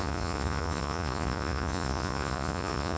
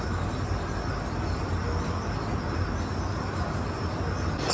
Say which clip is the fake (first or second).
first